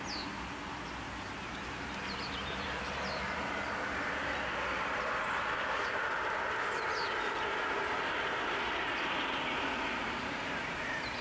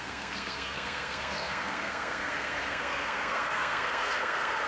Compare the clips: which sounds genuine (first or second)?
first